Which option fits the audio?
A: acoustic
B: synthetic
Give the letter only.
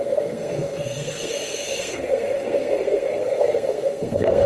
B